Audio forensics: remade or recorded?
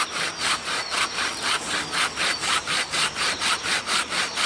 remade